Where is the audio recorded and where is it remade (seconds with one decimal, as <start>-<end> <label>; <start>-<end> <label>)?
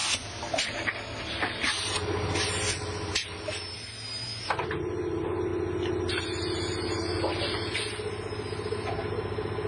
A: 0.0-9.7 recorded